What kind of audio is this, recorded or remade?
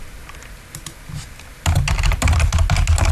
recorded